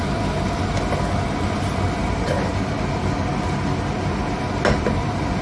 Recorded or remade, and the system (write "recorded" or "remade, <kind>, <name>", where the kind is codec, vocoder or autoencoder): recorded